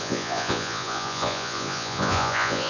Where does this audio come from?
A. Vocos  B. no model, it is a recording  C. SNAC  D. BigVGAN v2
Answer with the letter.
A